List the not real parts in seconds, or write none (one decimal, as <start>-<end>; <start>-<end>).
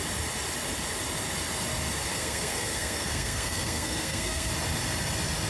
2.1-4.5